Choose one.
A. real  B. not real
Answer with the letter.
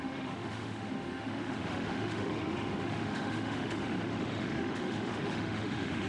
B